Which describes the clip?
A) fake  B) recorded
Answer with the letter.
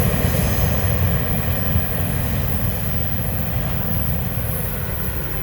B